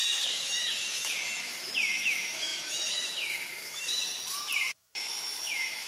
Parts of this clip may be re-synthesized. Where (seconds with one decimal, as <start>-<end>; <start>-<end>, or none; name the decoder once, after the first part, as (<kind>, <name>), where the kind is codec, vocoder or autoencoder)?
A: 0.0-4.0 (autoencoder, DAC-VAE); 4.7-5.9